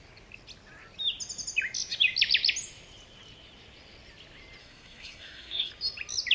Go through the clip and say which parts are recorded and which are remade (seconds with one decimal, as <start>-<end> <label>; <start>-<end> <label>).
0.0-4.6 recorded; 4.6-5.7 remade; 5.7-6.3 recorded